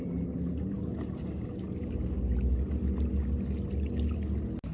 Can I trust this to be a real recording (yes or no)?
yes